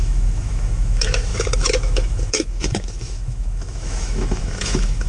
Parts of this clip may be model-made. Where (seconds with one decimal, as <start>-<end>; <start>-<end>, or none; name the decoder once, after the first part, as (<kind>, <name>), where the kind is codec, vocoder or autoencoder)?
0.0-5.1 (autoencoder, DAC-VAE)